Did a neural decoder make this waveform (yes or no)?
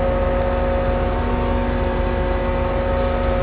no